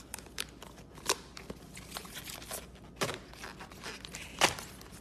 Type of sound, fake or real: real